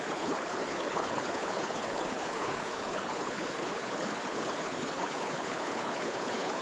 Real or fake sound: fake